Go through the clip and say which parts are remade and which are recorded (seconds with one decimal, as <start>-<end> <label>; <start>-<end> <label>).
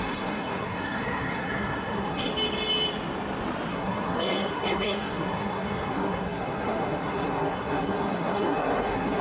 0.0-2.3 remade; 2.3-3.7 recorded; 3.7-9.2 remade